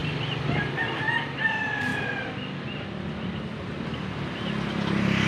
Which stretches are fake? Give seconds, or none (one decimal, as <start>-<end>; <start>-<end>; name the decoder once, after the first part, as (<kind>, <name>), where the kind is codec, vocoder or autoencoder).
1.0-1.9 (vocoder, BigVGAN v2); 4.6-5.3